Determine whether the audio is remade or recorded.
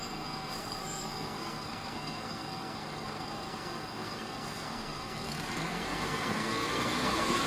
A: remade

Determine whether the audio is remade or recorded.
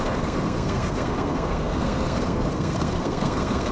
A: remade